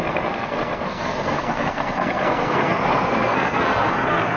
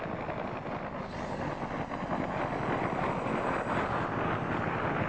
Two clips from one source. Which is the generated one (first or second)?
first